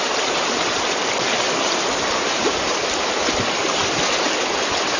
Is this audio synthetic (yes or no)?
no